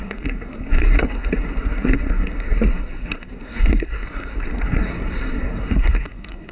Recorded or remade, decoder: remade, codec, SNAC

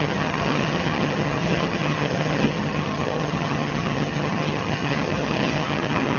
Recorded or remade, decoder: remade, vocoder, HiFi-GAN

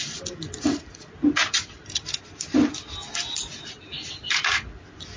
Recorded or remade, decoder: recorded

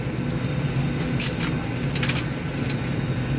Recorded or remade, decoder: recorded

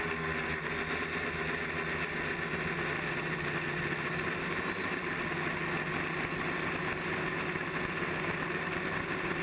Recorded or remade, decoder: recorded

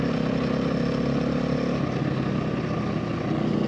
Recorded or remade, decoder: recorded